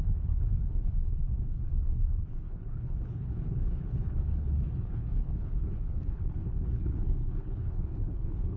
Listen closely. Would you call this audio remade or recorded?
remade